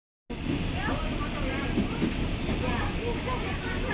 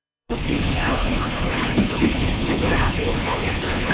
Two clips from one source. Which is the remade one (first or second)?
second